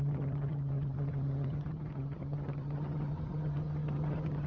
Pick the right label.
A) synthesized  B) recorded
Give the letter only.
A